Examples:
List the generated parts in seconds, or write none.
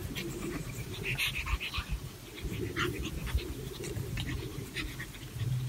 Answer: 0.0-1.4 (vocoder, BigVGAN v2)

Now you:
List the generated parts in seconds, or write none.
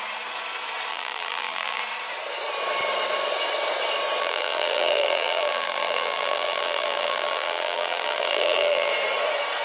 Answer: 0.9-1.8 (vocoder, BigVGAN v2); 4.2-8.9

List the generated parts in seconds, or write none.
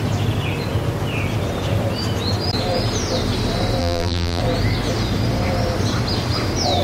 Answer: 3.8-4.4 (vocoder, BigVGAN v2)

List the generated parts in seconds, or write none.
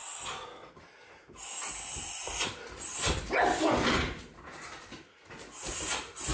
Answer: none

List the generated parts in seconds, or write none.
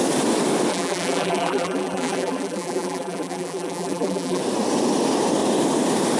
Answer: 0.7-4.4 (vocoder, BigVGAN v2)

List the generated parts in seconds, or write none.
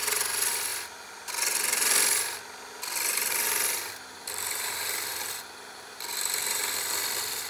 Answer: none